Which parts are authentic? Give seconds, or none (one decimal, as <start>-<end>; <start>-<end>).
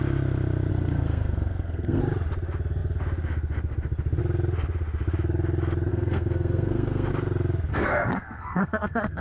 0.0-0.7; 2.0-5.9; 7.1-7.7